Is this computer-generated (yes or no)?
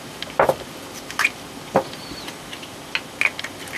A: no